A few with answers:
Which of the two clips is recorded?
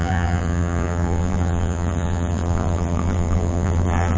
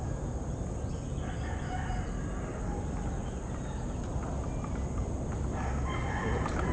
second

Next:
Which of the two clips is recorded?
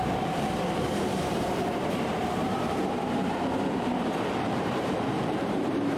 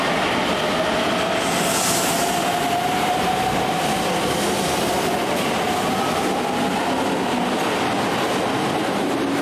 second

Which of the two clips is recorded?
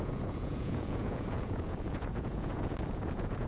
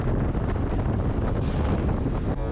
second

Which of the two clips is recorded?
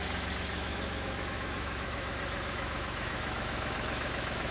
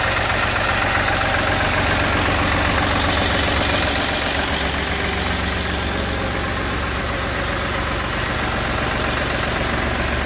second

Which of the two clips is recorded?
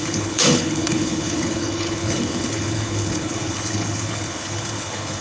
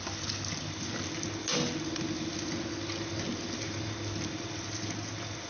second